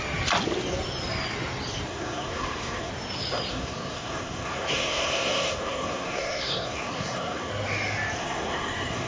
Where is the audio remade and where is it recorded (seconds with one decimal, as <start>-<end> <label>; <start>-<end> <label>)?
0.0-1.9 recorded; 1.9-2.9 remade; 2.9-3.5 recorded; 3.5-7.5 remade; 7.5-8.2 recorded; 8.2-9.1 remade